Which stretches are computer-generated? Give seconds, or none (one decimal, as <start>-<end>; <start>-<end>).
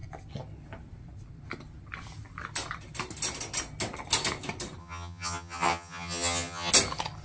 4.8-6.7